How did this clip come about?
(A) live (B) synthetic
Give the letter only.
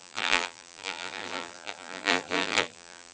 B